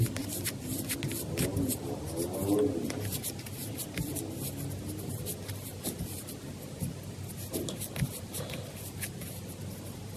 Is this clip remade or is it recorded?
recorded